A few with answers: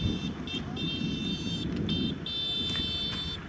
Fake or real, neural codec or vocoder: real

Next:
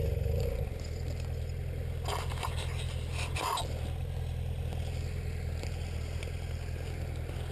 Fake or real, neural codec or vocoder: real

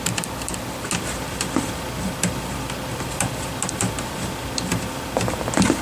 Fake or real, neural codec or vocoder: real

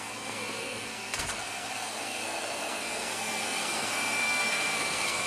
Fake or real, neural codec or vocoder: fake, codec, SNAC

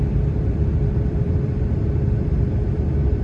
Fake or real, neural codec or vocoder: fake, vocoder, BigVGAN v2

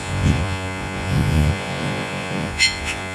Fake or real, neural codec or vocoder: fake, vocoder, Vocos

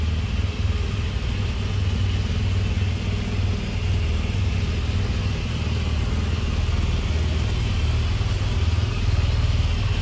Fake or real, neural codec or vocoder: real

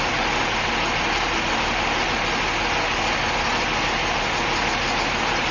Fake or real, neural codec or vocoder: real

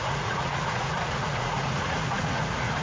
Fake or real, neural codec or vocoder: fake, vocoder, Vocos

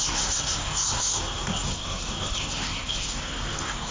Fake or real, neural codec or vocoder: fake, codec, SNAC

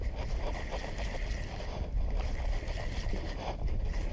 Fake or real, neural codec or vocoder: real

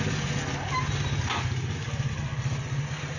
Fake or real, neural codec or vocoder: real